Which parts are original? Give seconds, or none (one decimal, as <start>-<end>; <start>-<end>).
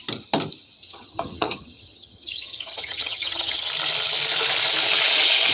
0.0-0.8; 3.7-5.5